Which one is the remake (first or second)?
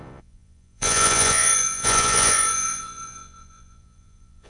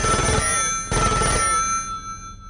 first